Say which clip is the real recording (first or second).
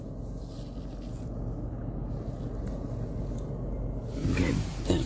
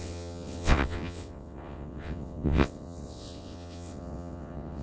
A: first